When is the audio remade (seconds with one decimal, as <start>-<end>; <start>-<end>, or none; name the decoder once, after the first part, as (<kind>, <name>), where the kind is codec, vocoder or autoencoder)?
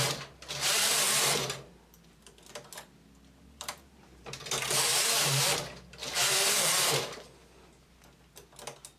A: none